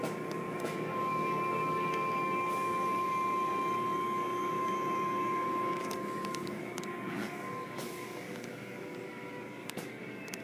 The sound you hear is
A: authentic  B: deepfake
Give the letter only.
B